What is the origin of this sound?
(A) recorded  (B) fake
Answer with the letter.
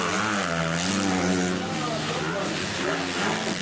A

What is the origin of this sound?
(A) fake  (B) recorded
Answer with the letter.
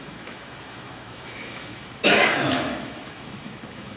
A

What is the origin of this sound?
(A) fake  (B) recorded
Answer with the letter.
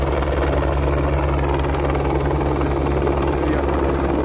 B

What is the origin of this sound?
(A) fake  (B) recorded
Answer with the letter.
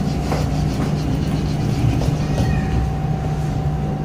B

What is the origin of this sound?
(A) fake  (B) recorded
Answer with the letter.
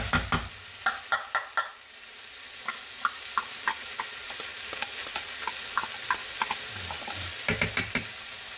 B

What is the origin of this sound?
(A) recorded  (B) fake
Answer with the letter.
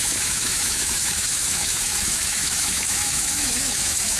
B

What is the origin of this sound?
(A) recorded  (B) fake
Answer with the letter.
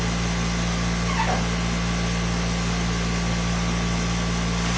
A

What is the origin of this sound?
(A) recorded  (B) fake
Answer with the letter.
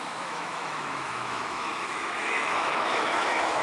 B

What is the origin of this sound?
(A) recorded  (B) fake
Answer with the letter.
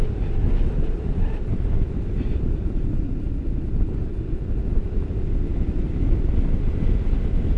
A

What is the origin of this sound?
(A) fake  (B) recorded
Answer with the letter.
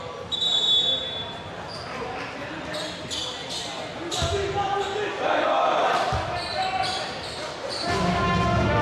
B